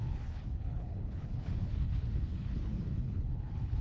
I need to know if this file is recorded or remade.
remade